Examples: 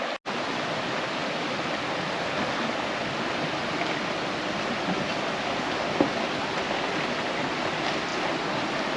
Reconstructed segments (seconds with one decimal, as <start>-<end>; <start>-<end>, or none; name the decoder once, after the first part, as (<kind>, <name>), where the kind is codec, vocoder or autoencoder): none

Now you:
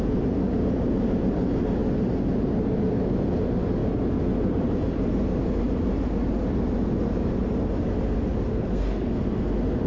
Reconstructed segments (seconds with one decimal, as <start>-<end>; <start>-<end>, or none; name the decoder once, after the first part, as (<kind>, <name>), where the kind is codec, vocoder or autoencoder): 8.5-9.1 (codec, SNAC)

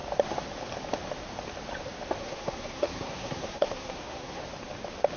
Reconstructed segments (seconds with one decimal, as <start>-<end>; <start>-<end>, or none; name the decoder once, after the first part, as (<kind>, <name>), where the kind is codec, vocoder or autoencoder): 2.2-4.4 (codec, SNAC)

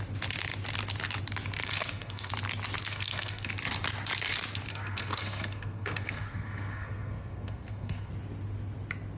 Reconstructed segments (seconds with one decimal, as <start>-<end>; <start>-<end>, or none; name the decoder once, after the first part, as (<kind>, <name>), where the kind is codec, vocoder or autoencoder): 1.6-2.3 (codec, SNAC); 2.9-3.5; 4.7-8.1